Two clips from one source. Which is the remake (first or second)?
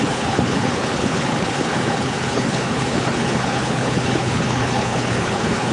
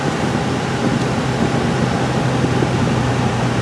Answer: first